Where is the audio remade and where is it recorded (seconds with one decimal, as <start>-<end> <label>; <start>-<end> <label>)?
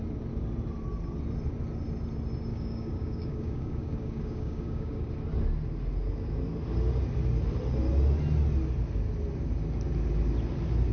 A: 0.0-2.5 recorded; 2.5-5.1 remade; 5.1-10.9 recorded